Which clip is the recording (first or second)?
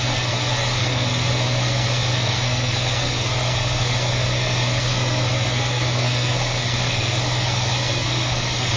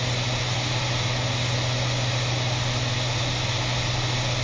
second